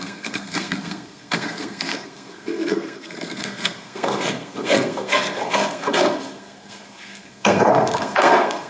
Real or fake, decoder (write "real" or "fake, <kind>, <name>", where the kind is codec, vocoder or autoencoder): fake, codec, SNAC